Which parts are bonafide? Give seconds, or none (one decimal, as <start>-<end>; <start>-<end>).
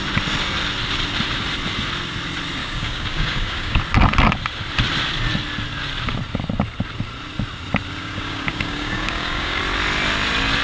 0.0-2.6; 3.8-8.0; 9.6-10.6